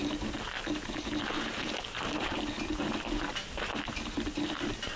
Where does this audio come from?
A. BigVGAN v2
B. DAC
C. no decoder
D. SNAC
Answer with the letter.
A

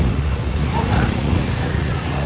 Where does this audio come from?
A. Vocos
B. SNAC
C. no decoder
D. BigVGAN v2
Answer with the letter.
A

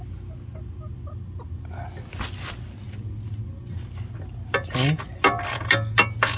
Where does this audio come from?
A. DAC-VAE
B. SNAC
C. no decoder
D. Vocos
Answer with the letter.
C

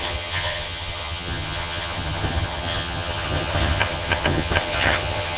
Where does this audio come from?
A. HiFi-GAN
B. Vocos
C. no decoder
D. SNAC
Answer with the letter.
A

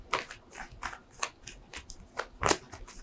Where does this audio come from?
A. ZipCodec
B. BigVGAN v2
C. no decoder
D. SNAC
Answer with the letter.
C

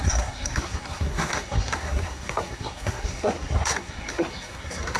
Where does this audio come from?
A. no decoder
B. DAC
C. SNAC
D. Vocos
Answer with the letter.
C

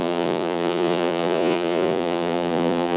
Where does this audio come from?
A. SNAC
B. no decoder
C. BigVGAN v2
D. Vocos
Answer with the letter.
D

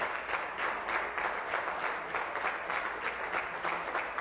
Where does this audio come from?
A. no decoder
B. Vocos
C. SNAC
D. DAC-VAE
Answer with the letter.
A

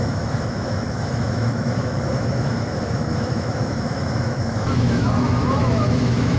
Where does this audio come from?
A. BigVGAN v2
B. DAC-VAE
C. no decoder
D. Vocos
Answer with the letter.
B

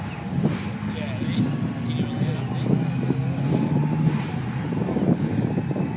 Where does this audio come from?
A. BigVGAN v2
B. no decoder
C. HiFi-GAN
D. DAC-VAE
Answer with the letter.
B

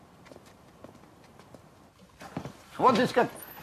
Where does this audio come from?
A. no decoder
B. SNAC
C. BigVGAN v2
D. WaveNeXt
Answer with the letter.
C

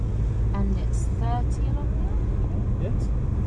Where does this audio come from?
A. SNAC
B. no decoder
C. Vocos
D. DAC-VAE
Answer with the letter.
B